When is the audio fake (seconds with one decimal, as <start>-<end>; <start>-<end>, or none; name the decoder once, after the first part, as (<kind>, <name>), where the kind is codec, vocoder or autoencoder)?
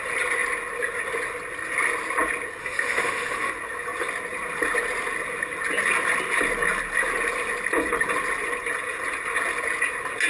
2.6-3.5 (autoencoder, DAC-VAE)